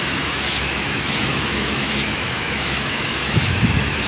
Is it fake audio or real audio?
fake